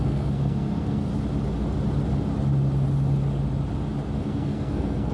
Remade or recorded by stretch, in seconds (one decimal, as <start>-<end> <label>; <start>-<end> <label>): 0.0-1.1 remade; 1.1-4.2 recorded; 4.2-5.1 remade